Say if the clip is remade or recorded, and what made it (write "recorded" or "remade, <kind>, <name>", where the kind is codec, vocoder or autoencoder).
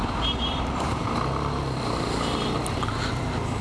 remade, vocoder, BigVGAN v2